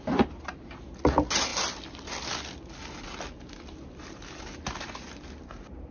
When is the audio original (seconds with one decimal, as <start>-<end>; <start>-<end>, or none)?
0.0-5.9